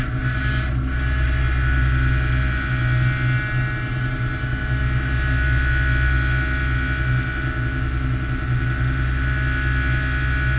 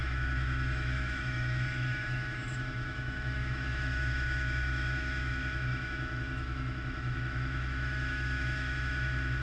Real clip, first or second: first